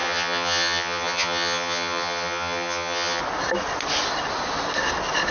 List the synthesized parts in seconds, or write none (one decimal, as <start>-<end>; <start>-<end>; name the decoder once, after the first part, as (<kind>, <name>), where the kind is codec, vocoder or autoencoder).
0.0-3.2 (vocoder, HiFi-GAN)